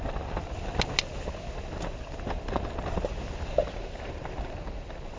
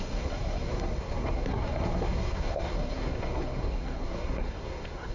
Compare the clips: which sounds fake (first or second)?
second